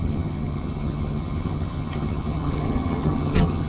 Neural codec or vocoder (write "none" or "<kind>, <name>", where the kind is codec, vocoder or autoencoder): vocoder, HiFi-GAN